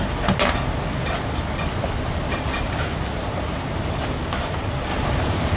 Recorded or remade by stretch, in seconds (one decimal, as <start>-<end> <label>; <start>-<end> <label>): 0.0-5.6 recorded